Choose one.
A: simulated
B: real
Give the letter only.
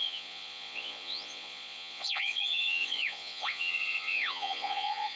A